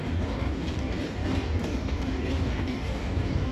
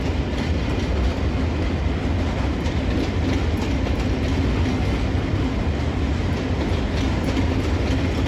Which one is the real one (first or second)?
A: second